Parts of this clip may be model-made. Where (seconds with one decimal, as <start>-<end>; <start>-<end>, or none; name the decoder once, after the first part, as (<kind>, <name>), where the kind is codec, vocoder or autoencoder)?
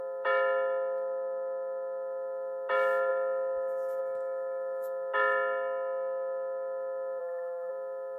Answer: 7.2-7.7 (vocoder, BigVGAN v2)